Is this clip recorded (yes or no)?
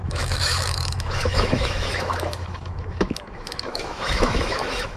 no